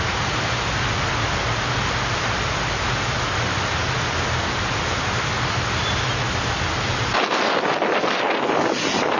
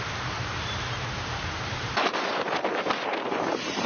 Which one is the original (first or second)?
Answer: first